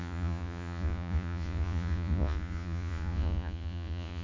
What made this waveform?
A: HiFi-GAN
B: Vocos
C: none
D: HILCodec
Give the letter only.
B